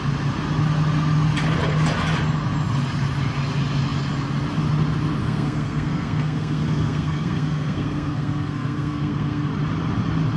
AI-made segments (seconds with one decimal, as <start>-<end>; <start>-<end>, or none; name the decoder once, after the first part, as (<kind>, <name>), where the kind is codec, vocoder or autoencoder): 5.2-9.5 (codec, SNAC)